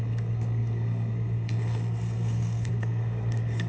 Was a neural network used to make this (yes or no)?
yes